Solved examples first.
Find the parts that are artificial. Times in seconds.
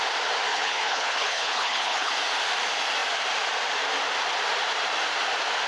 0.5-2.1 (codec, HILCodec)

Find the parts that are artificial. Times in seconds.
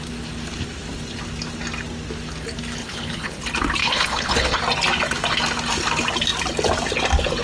2.8-3.4 (codec, HILCodec); 3.8-4.6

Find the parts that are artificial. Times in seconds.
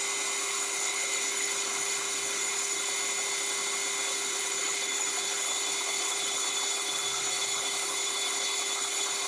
0.4-2.9 (codec, HILCodec); 4.1-9.3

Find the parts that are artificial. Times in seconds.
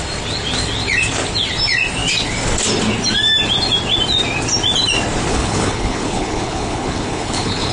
5.3-7.7 (codec, HILCodec)